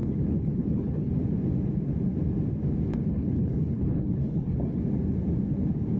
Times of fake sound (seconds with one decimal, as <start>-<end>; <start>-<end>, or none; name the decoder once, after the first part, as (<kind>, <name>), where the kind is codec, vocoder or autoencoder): 0.0-1.1 (codec, HILCodec); 2.9-4.8